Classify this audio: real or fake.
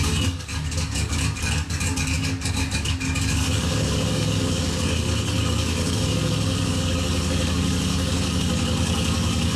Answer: fake